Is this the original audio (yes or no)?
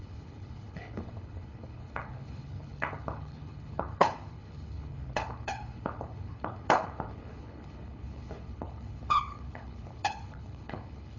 no